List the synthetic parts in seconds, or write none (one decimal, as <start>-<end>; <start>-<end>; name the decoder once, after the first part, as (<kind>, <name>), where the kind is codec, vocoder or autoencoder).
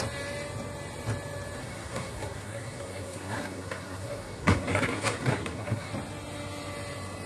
1.6-5.9 (codec, SNAC)